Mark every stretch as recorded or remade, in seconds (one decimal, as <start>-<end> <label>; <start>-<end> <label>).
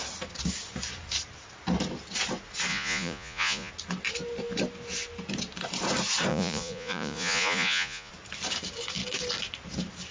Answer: 0.0-2.7 recorded; 2.7-3.7 remade; 3.7-6.3 recorded; 6.3-8.1 remade; 8.1-10.1 recorded